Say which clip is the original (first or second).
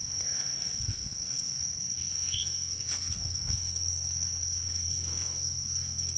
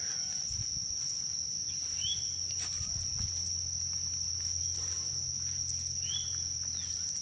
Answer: second